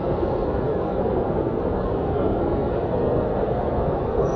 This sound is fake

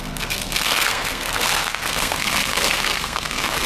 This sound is fake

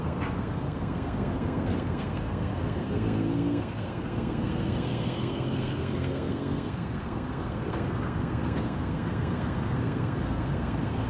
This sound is fake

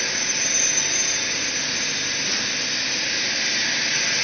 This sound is real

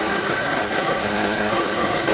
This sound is fake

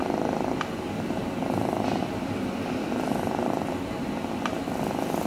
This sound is real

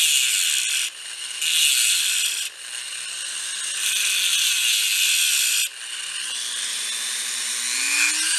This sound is real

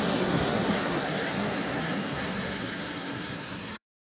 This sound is fake